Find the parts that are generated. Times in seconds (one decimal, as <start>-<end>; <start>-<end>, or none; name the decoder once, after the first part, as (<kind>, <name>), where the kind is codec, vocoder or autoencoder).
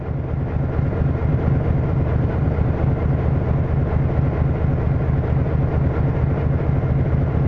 1.2-3.0 (vocoder, BigVGAN v2)